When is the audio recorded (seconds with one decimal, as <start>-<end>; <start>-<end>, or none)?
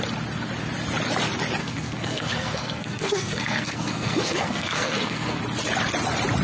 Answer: 0.0-1.6; 5.4-6.4